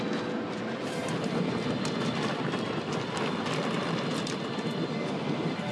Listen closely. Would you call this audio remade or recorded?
recorded